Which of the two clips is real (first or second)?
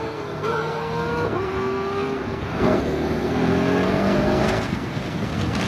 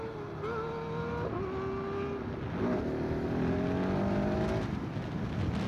second